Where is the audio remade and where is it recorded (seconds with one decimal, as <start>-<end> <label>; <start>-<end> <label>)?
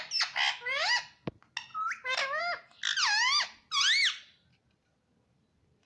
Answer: 0.0-5.9 recorded